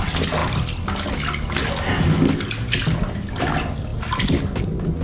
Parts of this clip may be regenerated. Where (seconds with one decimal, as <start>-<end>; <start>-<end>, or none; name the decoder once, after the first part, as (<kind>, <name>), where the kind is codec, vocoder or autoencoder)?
none